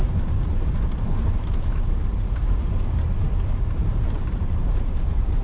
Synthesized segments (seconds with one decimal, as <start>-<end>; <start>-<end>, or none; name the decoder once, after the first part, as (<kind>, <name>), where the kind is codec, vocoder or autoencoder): 0.0-2.6 (vocoder, BigVGAN v2); 3.7-5.4